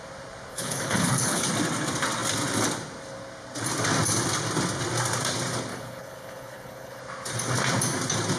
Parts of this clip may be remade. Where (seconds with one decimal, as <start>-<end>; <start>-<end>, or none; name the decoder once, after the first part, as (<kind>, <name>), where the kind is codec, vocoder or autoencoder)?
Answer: 0.5-1.5 (codec, HILCodec); 5.7-7.0

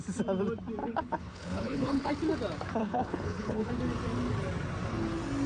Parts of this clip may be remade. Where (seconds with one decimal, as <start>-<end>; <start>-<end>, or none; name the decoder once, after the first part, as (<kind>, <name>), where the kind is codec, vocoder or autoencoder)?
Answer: 0.8-2.1 (codec, HILCodec); 2.8-3.7